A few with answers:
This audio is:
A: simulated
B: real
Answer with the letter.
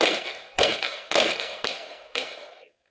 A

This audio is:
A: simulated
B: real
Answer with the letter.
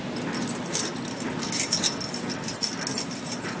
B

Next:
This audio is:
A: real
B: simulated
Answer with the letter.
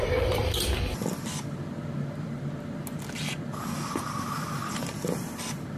A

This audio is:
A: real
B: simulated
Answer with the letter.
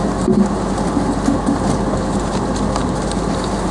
A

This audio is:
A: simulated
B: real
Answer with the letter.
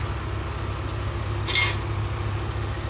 B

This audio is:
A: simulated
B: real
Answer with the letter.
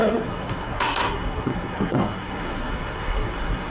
A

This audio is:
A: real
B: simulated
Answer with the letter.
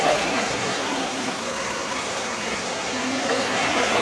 B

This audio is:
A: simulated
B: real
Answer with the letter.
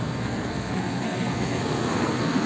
A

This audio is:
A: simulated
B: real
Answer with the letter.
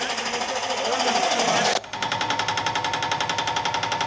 B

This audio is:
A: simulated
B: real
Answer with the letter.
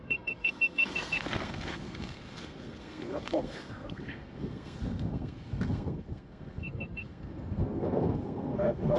A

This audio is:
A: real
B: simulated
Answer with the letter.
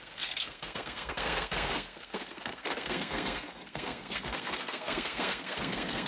B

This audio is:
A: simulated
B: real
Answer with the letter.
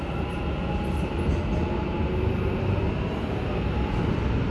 B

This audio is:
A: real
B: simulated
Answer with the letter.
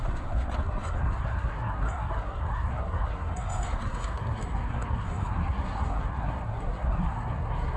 B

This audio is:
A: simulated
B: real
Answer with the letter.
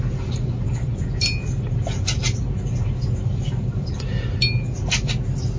B